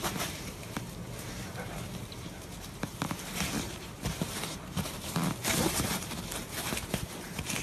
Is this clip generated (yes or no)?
yes